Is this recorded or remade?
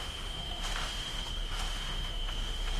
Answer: remade